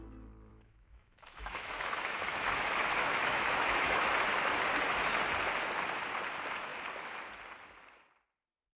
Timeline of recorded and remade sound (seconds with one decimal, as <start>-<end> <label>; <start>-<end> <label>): 0.0-0.5 recorded; 0.5-4.0 remade; 4.0-8.8 recorded